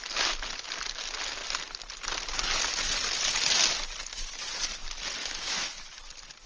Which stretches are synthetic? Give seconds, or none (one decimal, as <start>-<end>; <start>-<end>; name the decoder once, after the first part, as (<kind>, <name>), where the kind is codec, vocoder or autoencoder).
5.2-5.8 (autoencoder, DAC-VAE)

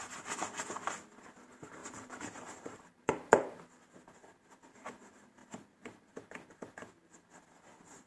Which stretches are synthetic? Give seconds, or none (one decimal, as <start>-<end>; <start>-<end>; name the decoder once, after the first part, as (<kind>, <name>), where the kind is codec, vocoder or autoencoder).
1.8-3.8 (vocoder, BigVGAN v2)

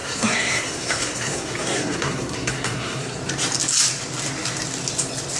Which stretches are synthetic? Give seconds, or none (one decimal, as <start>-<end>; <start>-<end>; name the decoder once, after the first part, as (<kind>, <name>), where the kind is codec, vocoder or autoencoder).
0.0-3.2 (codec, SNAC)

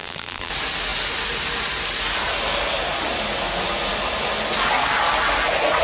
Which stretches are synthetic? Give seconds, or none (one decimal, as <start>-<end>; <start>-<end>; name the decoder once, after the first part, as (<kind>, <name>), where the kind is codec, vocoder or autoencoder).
0.0-0.5 (vocoder, BigVGAN v2)